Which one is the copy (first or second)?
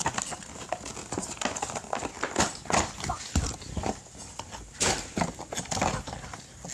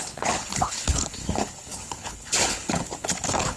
second